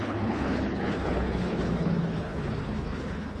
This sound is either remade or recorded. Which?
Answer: remade